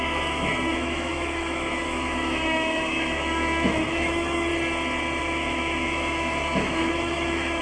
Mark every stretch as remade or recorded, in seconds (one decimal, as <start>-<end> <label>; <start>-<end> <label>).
0.0-4.5 remade; 4.5-5.2 recorded; 5.2-7.6 remade